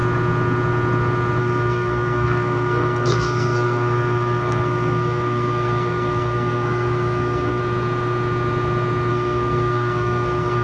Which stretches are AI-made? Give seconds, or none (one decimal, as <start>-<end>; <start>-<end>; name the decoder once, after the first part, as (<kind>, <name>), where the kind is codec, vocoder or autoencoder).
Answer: 1.4-7.6 (codec, SNAC); 9.1-10.6